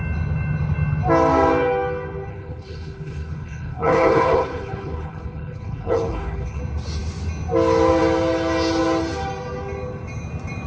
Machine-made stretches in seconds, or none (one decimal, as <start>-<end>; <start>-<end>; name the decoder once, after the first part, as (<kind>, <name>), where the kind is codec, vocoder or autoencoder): 2.3-6.6 (codec, HILCodec)